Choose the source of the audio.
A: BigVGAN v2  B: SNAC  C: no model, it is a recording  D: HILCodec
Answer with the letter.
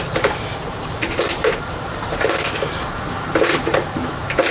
A